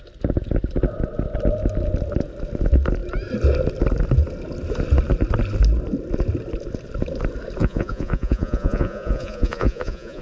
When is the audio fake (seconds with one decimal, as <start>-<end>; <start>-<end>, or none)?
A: 7.6-10.2